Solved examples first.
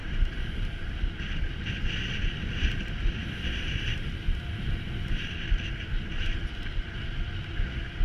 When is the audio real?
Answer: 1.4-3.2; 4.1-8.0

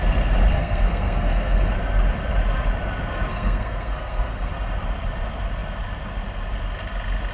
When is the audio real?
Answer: 0.0-0.5; 1.7-3.3; 4.5-7.3

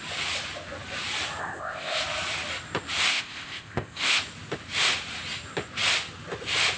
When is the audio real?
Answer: 0.0-1.4; 2.0-3.1; 4.2-6.8

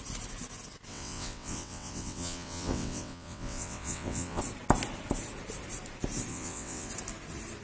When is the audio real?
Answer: 0.0-0.9; 4.4-6.3; 6.9-7.6

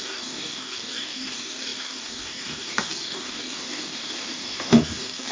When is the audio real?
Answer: none